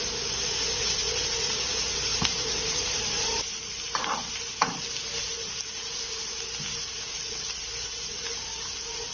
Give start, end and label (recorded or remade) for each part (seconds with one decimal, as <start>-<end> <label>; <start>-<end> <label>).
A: 0.0-9.1 recorded